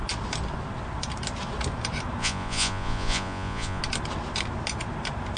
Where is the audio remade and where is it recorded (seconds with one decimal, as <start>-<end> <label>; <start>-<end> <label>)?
0.0-2.2 recorded; 2.2-3.8 remade; 3.8-5.4 recorded